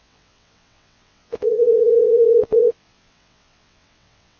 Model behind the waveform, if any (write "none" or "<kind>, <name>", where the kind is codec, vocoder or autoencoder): vocoder, WaveNeXt